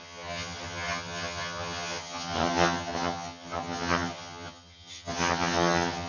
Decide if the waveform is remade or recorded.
remade